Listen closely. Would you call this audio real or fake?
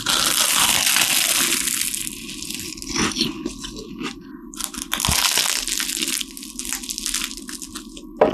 real